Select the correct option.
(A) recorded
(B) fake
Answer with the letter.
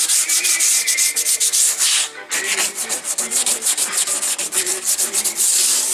B